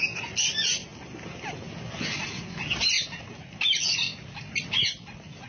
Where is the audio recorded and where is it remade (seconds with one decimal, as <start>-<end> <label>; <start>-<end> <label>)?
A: 0.0-5.5 recorded